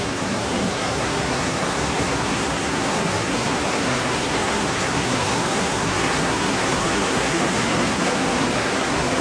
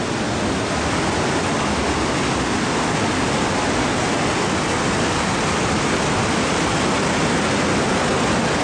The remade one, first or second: first